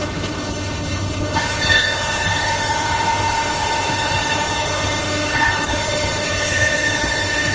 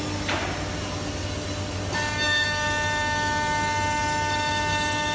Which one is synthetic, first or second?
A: first